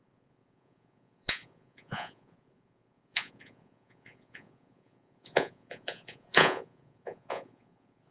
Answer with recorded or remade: remade